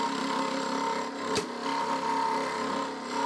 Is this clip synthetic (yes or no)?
yes